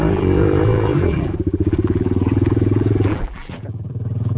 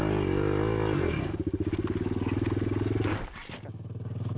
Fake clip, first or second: first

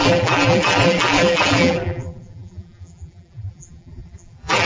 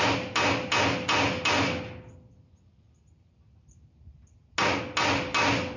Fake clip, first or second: first